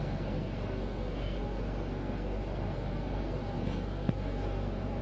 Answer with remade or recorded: remade